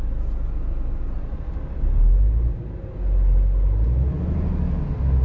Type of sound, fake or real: real